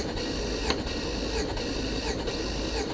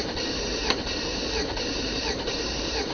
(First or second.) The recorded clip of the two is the first